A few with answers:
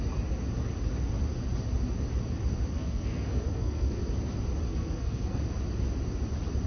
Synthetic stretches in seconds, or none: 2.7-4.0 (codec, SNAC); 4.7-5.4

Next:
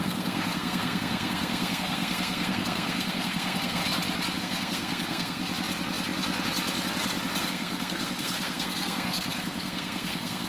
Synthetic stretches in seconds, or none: 0.0-3.8 (codec, SNAC); 4.4-5.4; 7.4-10.5

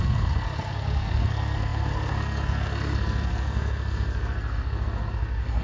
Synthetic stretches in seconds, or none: 0.0-5.6 (codec, SNAC)

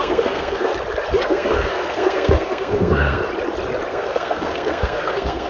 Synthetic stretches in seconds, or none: 0.0-0.7 (codec, SNAC); 1.2-3.2; 3.9-5.5

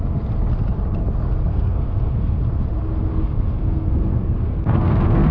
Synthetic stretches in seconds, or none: 1.5-2.4 (codec, SNAC); 3.1-5.3